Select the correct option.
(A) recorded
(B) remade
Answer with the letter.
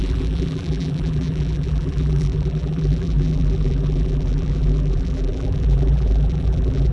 B